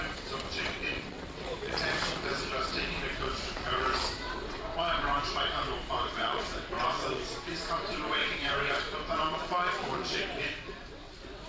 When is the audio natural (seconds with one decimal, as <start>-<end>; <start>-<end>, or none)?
none